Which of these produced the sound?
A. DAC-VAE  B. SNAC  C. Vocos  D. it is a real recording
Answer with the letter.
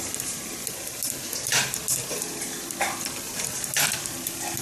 D